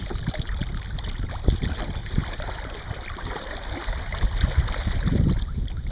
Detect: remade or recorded recorded